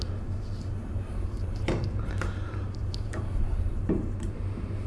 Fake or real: fake